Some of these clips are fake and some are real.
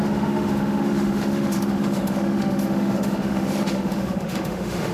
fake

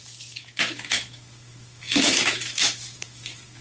fake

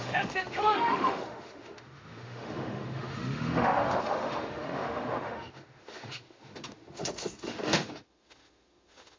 fake